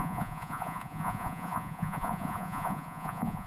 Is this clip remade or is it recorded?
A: remade